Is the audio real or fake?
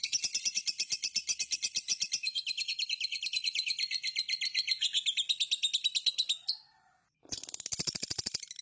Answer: real